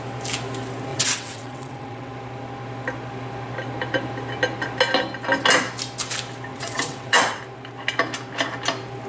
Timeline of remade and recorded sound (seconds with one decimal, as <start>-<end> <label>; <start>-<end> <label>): 0.0-0.9 recorded; 0.9-2.1 remade; 2.1-6.5 recorded; 6.5-7.4 remade; 7.4-9.1 recorded